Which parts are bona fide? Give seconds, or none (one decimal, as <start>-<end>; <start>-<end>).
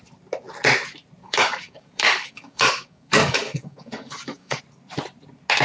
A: 0.0-1.2; 4.6-5.6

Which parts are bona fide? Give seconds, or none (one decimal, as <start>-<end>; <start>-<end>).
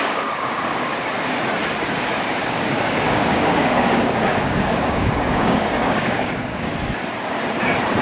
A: 0.9-2.3; 6.7-8.0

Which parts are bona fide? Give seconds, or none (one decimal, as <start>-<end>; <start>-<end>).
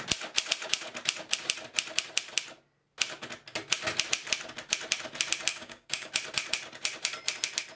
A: 0.0-5.5; 6.1-7.8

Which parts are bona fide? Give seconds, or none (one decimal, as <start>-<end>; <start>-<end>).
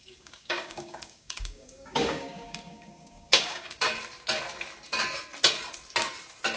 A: 4.0-6.6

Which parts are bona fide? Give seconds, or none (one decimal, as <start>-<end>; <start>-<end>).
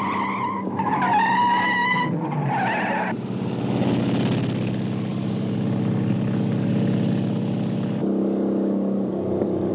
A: 0.0-5.1; 6.7-8.0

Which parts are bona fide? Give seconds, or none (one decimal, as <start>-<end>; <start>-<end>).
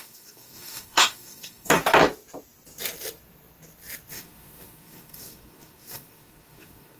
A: 1.8-4.1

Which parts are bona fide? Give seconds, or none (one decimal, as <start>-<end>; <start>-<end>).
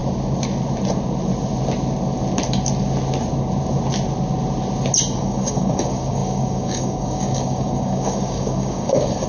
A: 0.0-5.2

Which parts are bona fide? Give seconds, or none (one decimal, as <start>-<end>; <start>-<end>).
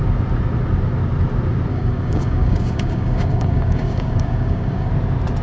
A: 0.0-1.7; 4.9-5.4